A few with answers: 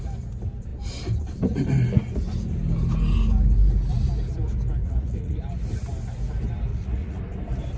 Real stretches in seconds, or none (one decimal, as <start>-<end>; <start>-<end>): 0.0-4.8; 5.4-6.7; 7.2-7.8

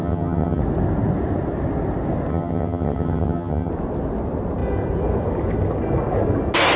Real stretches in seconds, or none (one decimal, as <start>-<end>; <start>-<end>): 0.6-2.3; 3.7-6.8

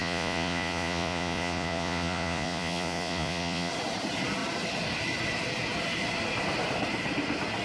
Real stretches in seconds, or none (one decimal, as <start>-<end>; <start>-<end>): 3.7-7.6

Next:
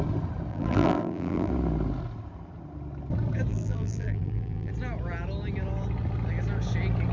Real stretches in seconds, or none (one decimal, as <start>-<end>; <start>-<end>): 0.0-0.5; 1.5-3.5; 4.7-7.1

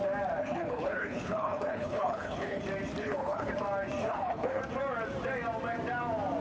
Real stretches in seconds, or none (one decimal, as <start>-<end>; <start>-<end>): 0.0-0.4; 2.6-3.0; 3.5-4.0; 4.6-6.4

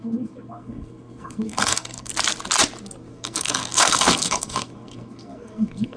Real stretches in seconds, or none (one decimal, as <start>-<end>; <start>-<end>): 2.1-3.1